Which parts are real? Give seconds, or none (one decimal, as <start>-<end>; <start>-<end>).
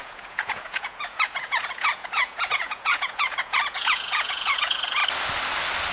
5.0-5.9